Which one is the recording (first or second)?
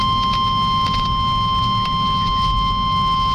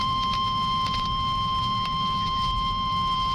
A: first